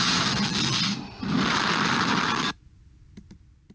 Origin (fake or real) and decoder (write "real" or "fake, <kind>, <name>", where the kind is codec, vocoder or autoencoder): real